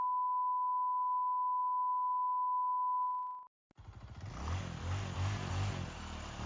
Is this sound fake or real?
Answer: real